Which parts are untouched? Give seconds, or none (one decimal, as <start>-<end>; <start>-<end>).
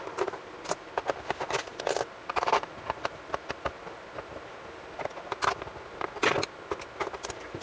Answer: 0.0-7.6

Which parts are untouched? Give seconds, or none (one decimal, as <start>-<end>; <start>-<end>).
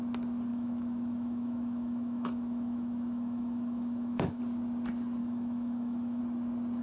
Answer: 0.0-0.5; 4.4-5.2; 6.2-6.8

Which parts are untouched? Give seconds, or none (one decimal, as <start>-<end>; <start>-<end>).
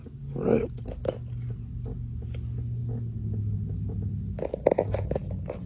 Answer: 0.0-5.7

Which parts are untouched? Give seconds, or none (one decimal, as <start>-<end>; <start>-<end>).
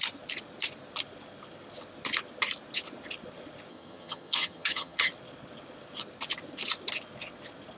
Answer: 0.0-3.7; 5.1-7.8